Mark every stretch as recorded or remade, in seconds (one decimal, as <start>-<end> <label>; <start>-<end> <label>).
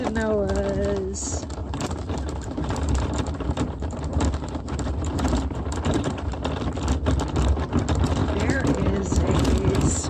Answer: 0.0-1.6 recorded; 1.6-6.4 remade; 6.4-8.2 recorded; 8.2-10.1 remade